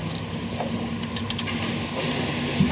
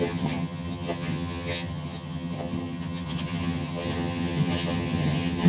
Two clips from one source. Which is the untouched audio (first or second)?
first